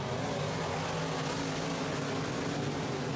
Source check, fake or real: real